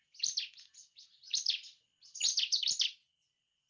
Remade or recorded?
recorded